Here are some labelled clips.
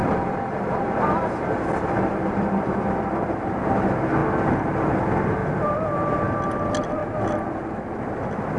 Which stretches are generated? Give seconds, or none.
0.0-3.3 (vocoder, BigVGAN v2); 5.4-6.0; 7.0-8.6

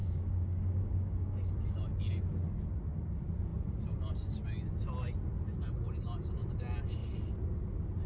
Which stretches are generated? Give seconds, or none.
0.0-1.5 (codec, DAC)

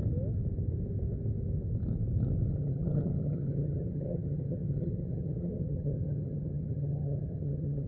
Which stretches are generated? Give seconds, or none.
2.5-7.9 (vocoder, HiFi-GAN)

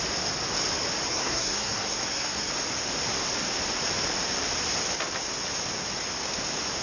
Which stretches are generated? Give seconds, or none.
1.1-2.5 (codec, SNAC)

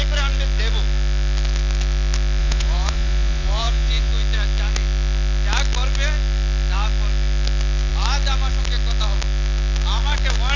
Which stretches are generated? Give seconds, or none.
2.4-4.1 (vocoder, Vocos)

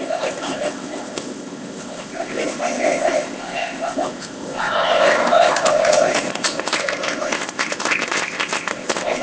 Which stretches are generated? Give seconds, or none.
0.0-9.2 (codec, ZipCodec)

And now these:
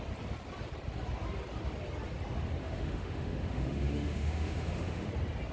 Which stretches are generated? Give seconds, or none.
2.6-5.1 (autoencoder, DAC-VAE)

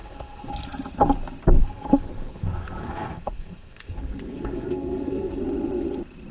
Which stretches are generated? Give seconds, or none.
0.0-0.5 (codec, SNAC); 1.6-5.4